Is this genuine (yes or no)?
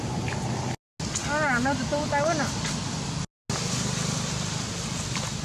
yes